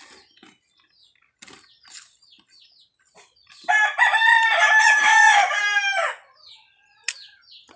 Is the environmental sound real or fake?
real